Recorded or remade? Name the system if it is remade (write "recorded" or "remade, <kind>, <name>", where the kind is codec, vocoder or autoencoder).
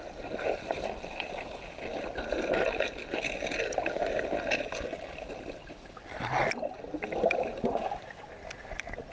recorded